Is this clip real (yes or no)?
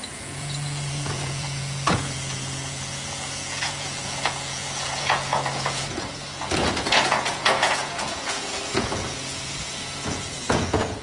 no